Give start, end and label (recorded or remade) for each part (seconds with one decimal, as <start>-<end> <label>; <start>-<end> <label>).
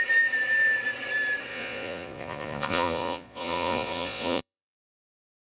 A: 0.0-1.5 recorded; 1.5-4.8 remade; 4.8-5.5 recorded